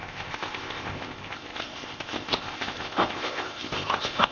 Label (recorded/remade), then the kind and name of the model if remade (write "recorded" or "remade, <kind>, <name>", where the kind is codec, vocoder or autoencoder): remade, codec, ZipCodec